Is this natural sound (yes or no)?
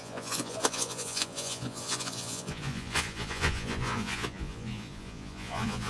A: no